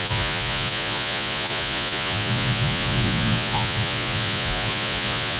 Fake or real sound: fake